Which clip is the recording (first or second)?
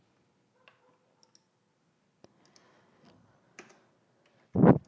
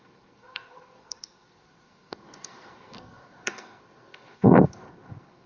first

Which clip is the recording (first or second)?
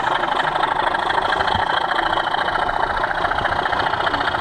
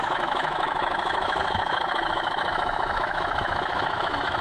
first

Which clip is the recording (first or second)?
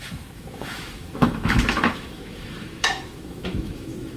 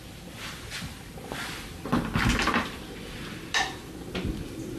second